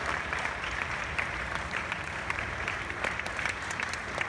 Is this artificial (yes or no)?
yes